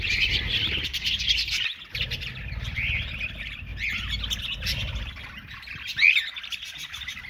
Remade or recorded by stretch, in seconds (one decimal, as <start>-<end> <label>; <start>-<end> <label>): 0.0-7.3 recorded